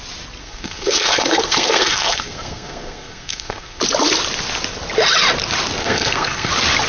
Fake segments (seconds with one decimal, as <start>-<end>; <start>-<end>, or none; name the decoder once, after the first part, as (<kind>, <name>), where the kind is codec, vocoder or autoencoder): 0.4-3.8 (codec, SNAC); 5.8-6.5